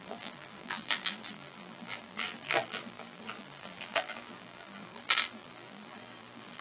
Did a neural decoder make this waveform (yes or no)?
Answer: yes